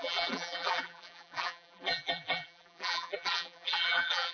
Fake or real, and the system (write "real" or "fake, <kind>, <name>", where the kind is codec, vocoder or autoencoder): fake, vocoder, BigVGAN v2